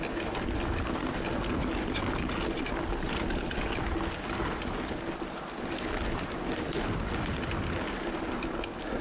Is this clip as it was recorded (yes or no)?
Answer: yes